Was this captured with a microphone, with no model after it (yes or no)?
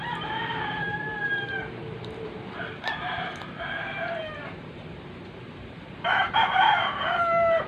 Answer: no